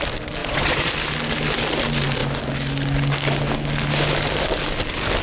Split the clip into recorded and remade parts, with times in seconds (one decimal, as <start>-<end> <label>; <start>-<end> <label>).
0.0-0.4 recorded; 0.4-0.9 remade; 0.9-5.2 recorded